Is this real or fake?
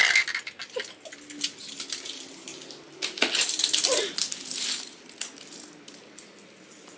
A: real